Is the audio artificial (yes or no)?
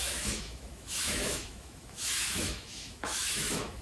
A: yes